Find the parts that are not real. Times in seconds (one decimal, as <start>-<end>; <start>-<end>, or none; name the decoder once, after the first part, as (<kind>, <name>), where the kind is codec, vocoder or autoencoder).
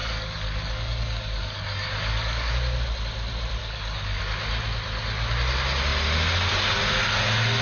0.0-2.5 (codec, DAC); 3.6-4.2